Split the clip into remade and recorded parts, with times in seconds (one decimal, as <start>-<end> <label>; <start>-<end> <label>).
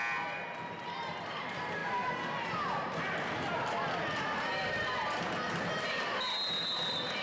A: 0.0-7.2 recorded